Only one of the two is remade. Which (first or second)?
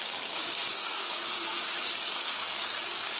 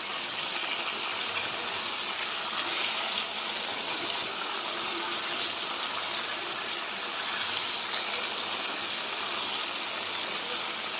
first